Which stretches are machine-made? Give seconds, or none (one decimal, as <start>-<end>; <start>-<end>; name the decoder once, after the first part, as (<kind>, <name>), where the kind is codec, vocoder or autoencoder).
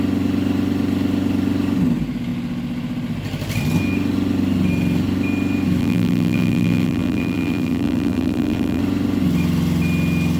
5.8-8.8 (vocoder, BigVGAN v2)